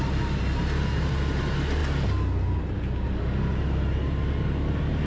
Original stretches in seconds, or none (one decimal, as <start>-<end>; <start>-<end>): 0.0-5.1